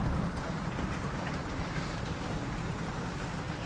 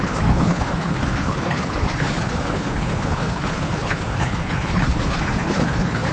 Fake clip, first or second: second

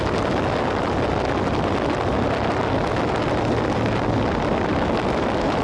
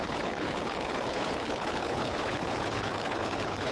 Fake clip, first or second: second